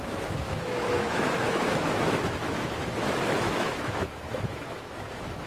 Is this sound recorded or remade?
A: remade